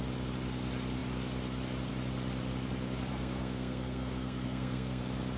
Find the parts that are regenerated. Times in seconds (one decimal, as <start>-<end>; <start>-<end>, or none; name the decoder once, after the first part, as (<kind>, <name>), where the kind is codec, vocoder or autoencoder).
3.1-5.0 (codec, SNAC)